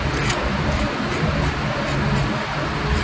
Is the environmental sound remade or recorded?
recorded